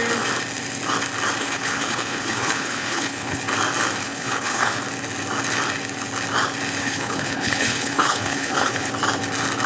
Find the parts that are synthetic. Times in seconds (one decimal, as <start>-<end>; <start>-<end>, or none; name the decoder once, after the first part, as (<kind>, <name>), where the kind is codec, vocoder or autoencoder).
1.4-3.4 (codec, HILCodec); 4.0-4.8; 6.8-8.9